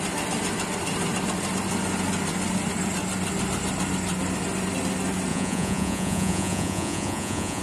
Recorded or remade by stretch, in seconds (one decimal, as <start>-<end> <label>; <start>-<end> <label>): 0.0-5.3 recorded; 5.3-7.6 remade